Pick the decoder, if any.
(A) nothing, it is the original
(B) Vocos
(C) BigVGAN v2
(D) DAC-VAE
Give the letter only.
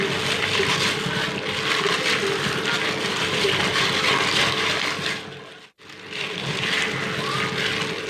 A